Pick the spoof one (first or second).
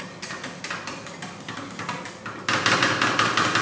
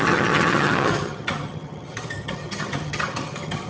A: second